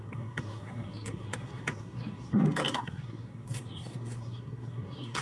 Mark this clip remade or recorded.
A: remade